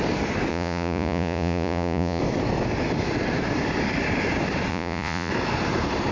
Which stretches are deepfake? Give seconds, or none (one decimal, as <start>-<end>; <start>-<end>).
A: 0.5-2.2; 4.7-5.3